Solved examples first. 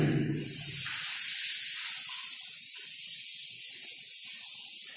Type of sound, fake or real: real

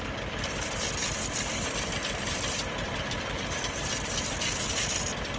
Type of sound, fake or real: real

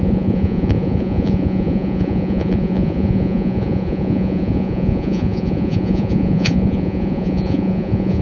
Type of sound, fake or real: fake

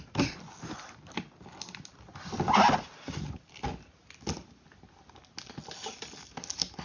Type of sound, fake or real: real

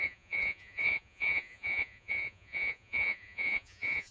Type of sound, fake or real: fake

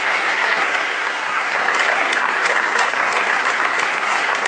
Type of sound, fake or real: fake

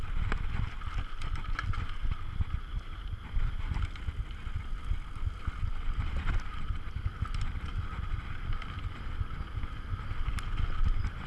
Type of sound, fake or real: real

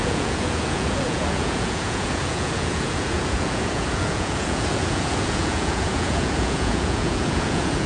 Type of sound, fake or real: fake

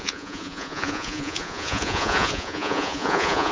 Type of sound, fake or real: fake